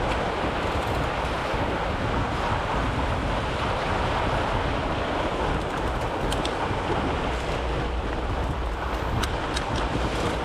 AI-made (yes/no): no